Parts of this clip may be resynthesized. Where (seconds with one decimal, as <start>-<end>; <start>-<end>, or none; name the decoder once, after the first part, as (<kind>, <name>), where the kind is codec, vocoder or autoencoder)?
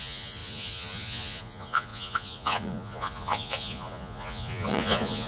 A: 0.0-5.3 (vocoder, Vocos)